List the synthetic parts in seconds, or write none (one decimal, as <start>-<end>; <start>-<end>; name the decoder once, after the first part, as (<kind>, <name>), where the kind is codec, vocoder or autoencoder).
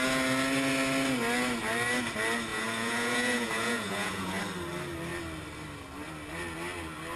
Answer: 2.5-4.4 (vocoder, Vocos)